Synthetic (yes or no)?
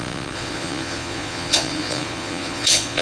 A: yes